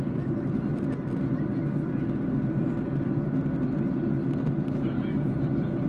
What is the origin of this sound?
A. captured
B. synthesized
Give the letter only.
A